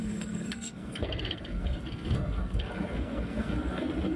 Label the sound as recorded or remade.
remade